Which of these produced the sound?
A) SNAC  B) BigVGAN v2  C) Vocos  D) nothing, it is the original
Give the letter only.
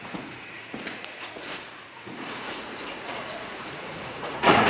C